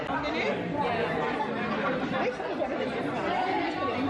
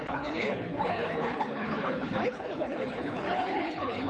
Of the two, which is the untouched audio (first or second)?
first